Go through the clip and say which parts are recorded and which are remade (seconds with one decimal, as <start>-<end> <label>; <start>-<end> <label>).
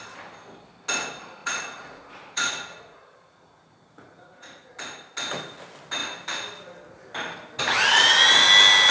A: 0.0-1.4 recorded; 1.4-4.7 remade; 4.7-8.9 recorded